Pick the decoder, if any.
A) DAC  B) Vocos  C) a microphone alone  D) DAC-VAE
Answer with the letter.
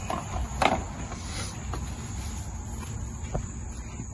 C